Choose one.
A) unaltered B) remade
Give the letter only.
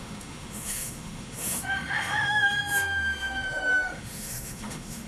B